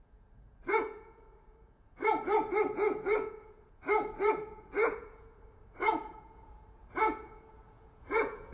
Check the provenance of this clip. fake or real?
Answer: fake